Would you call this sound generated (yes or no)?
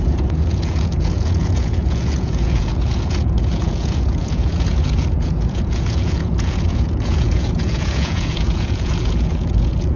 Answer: yes